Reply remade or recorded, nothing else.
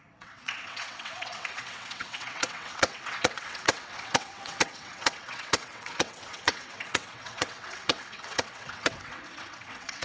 remade